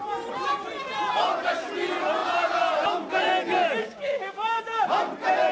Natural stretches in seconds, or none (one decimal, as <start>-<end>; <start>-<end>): 0.0-3.8; 4.6-5.5